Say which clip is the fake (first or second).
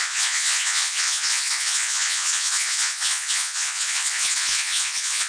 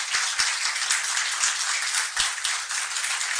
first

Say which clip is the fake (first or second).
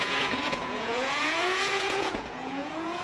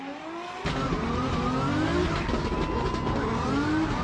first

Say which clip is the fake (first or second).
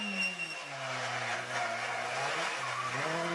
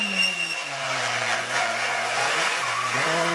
second